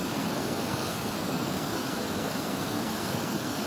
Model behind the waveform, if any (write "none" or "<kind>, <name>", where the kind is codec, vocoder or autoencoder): codec, SNAC